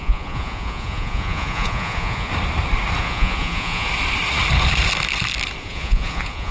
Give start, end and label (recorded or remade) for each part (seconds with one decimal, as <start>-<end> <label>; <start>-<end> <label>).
0.0-2.3 remade; 2.3-3.0 recorded; 3.0-3.9 remade; 3.9-5.6 recorded; 5.6-6.5 remade